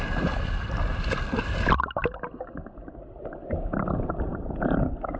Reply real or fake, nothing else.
real